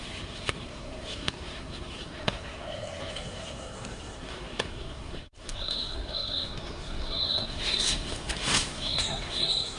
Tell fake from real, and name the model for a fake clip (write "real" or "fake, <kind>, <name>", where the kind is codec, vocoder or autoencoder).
fake, codec, SNAC